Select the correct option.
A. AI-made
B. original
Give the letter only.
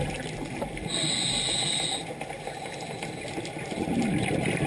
B